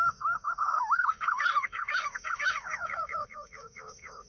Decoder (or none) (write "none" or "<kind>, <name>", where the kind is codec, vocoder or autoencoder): autoencoder, DAC-VAE